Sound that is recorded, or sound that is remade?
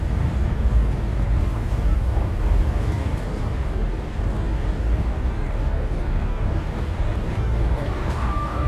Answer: remade